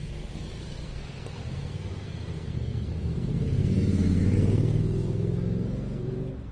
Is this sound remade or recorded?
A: remade